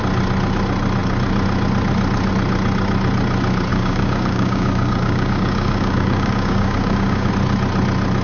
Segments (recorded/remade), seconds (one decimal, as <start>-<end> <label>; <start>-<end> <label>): 0.0-3.7 recorded; 3.7-7.3 remade; 7.3-8.2 recorded